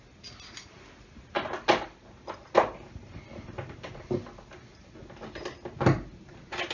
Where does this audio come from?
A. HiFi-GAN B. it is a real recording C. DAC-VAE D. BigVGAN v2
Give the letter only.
B